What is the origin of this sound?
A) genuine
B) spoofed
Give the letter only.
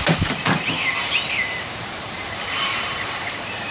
B